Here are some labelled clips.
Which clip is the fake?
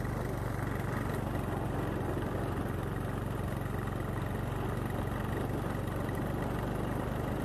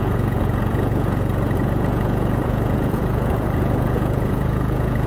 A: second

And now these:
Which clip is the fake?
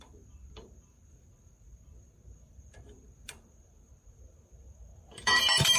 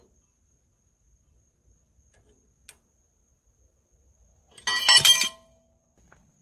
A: first